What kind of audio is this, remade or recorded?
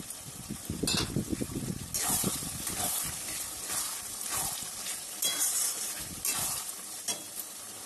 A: recorded